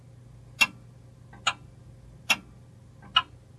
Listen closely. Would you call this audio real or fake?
real